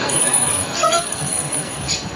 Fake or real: fake